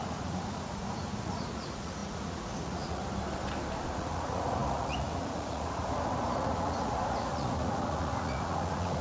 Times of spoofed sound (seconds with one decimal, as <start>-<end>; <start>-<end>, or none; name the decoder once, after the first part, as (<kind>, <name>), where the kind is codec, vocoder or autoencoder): 0.0-3.0 (vocoder, Vocos); 3.9-9.0